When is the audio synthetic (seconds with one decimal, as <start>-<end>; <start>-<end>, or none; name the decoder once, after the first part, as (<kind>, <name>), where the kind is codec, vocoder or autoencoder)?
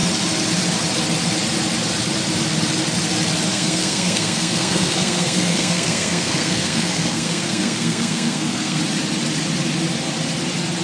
3.5-8.8 (codec, SNAC)